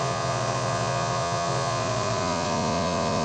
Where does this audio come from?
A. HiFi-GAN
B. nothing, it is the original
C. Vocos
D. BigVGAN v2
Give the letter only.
C